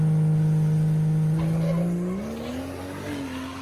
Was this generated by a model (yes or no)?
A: no